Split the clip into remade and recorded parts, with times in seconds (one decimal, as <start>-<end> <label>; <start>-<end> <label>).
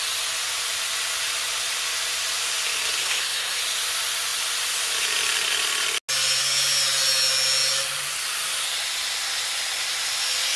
0.0-3.0 recorded; 3.0-3.6 remade; 3.6-10.6 recorded